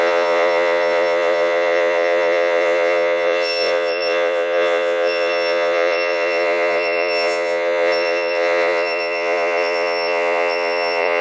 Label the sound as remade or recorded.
remade